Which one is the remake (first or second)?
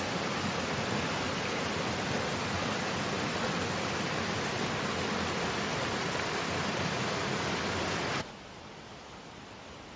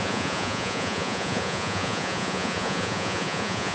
second